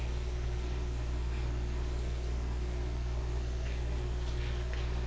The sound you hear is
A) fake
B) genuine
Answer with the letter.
A